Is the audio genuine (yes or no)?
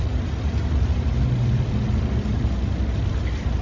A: no